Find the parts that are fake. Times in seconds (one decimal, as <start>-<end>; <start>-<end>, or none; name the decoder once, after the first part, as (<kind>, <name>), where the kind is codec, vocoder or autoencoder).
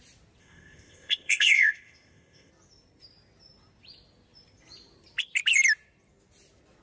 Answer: 0.4-2.5 (codec, ZipCodec)